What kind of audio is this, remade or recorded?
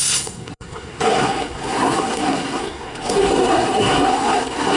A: remade